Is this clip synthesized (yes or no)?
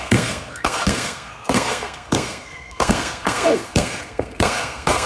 yes